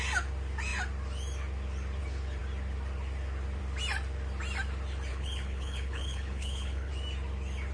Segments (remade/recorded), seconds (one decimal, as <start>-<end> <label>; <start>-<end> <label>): 0.0-5.1 recorded; 5.1-6.9 remade; 6.9-7.7 recorded